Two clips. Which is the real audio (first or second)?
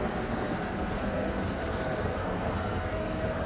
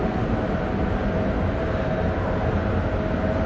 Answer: second